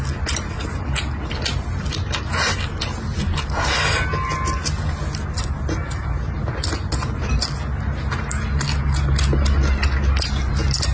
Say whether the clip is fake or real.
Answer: real